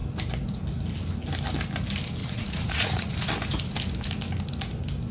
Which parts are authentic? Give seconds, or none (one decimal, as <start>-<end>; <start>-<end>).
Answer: 0.0-2.2; 3.1-5.1